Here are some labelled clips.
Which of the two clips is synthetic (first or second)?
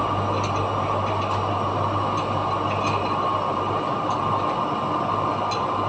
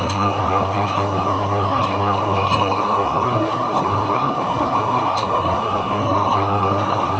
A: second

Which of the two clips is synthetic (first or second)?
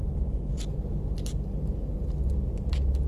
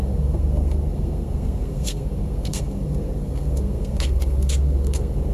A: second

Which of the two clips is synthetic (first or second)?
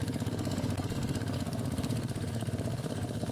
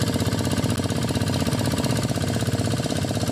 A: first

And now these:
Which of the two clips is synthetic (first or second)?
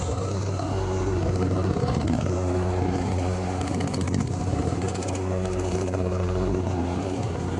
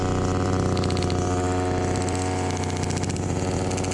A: first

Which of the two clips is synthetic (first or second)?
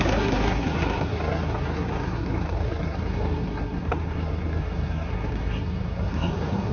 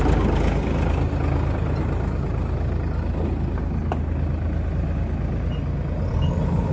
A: first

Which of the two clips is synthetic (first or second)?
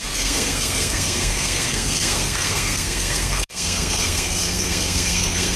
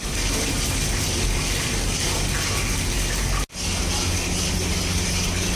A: first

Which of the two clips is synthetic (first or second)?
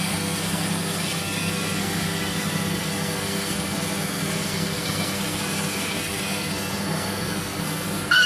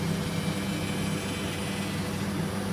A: first